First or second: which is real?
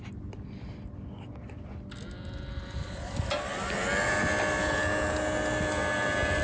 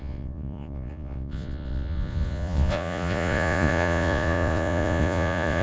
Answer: first